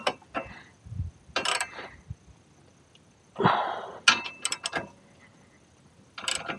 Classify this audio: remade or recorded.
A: recorded